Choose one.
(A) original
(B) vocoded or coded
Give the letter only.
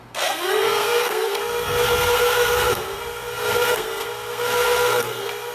B